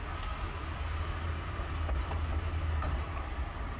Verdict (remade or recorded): recorded